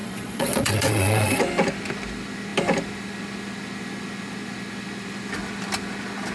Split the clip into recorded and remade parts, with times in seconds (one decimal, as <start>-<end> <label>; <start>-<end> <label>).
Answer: 0.0-1.4 remade; 1.4-6.3 recorded